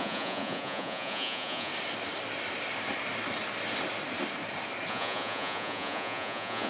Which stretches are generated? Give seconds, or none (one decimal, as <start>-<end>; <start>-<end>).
0.0-1.7; 4.9-6.7